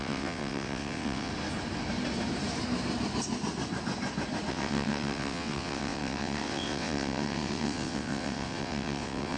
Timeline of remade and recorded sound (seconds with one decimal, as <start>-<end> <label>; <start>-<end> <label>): 0.0-1.3 remade; 1.3-4.5 recorded; 4.5-9.4 remade